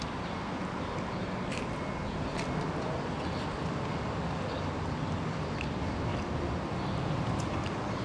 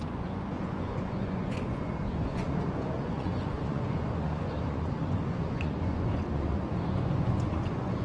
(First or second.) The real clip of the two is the first